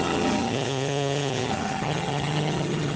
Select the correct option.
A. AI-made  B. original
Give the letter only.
A